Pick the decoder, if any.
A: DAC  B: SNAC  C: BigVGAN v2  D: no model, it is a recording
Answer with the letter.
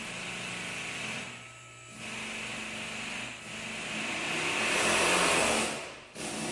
D